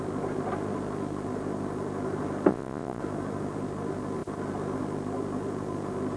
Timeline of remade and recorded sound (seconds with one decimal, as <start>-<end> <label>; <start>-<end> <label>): 0.0-2.5 recorded; 2.5-3.0 remade; 3.0-6.2 recorded